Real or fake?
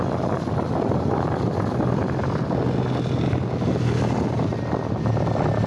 real